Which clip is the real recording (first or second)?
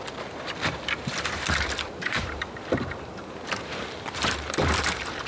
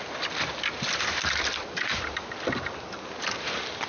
second